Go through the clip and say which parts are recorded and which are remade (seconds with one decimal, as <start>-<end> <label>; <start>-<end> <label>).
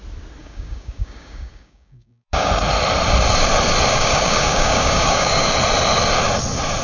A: 0.0-0.4 recorded; 0.4-2.5 remade; 2.5-3.9 recorded; 3.9-5.5 remade; 5.5-6.8 recorded